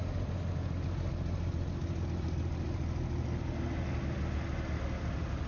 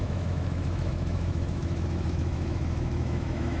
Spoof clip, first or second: second